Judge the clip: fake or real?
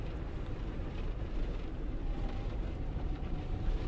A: fake